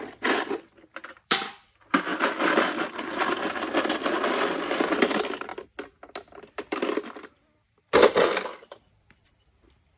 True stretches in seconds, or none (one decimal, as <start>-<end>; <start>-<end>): none